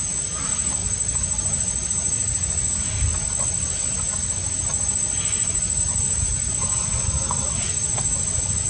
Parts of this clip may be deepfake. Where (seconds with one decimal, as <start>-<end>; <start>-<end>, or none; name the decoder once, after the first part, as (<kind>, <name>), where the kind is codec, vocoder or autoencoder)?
none